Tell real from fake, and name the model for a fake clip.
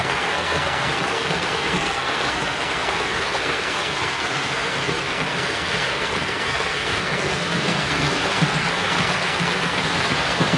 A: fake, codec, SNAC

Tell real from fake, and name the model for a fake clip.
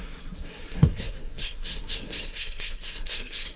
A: fake, codec, SNAC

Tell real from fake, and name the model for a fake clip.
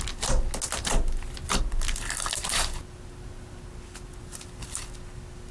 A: real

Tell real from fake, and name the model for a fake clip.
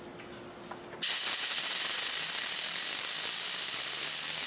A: real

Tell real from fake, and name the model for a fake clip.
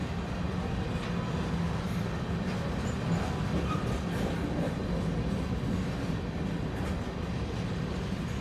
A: real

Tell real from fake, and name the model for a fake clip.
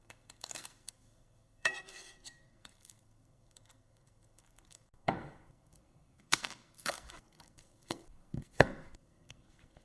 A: fake, codec, SNAC